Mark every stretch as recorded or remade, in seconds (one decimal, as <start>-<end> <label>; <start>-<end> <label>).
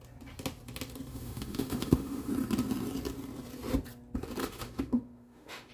0.0-1.1 recorded; 1.1-2.3 remade; 2.3-4.4 recorded; 4.4-5.7 remade